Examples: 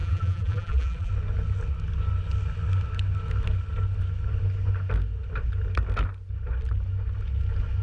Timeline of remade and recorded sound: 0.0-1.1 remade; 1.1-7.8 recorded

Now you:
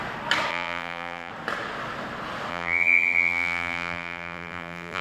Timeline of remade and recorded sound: 0.0-0.5 recorded; 0.5-1.3 remade; 1.3-2.5 recorded; 2.5-5.0 remade

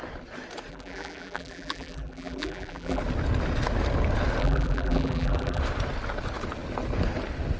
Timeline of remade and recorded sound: 0.0-0.7 recorded; 0.7-3.0 remade; 3.0-4.4 recorded; 4.4-5.6 remade; 5.6-7.6 recorded

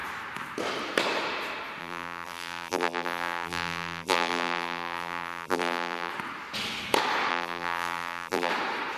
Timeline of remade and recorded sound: 0.0-1.8 recorded; 1.8-6.1 remade; 6.1-7.3 recorded; 7.3-8.5 remade; 8.5-9.0 recorded

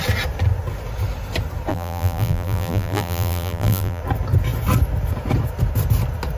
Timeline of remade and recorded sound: 0.0-1.7 recorded; 1.7-4.0 remade; 4.0-6.4 recorded

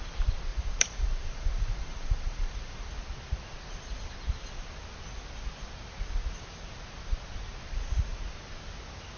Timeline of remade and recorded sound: 0.0-0.5 recorded; 0.5-2.9 remade; 2.9-9.2 recorded

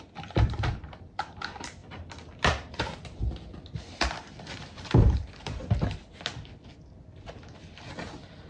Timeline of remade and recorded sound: 0.0-3.2 remade; 3.2-3.7 recorded; 3.7-6.0 remade; 6.0-8.5 recorded

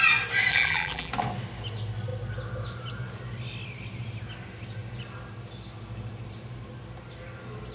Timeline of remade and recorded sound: 0.0-0.5 recorded; 0.5-1.1 remade; 1.1-7.7 recorded